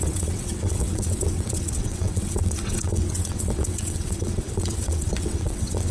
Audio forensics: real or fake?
fake